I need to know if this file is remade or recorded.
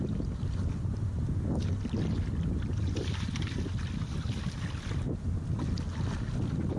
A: recorded